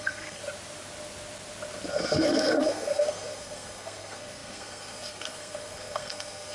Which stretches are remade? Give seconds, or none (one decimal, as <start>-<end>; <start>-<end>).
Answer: 0.0-0.4; 1.9-6.5

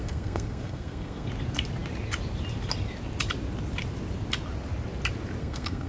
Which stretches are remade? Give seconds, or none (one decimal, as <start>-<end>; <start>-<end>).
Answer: 0.0-1.3; 5.4-5.9